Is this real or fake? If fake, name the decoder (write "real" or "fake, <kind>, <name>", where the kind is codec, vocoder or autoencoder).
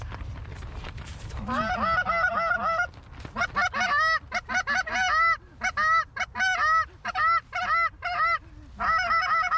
real